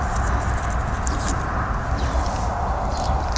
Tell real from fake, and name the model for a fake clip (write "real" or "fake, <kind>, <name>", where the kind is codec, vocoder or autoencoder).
real